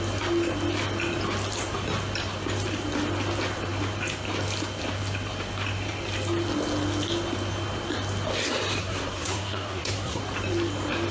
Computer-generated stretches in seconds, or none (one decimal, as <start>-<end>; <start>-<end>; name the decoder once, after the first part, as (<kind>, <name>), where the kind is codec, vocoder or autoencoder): 8.8-10.2 (codec, SNAC)